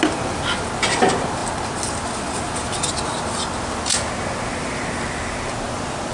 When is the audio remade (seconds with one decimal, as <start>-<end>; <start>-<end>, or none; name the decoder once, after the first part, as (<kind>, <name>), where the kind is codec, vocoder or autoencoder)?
none